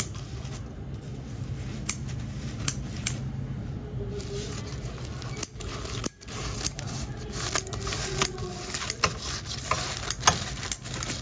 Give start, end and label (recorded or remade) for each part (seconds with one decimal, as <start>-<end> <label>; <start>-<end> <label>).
0.0-11.2 recorded